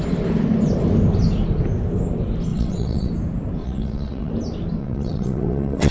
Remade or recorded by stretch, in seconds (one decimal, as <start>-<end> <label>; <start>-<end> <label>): 0.0-2.5 recorded; 2.5-3.1 remade; 3.1-3.6 recorded; 3.6-4.3 remade; 4.3-4.8 recorded; 4.8-5.9 remade